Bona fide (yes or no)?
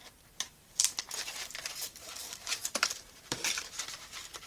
no